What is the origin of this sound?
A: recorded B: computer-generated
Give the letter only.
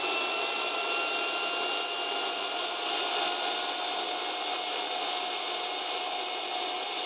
A